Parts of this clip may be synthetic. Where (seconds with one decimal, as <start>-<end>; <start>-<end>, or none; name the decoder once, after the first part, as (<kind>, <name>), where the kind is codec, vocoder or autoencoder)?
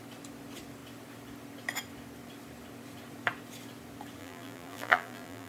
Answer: 4.2-5.5 (vocoder, BigVGAN v2)